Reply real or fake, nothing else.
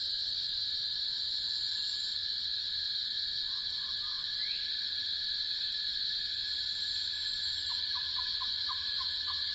real